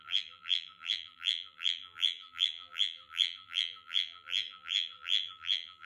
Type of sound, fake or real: fake